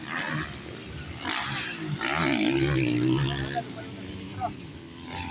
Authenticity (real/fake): real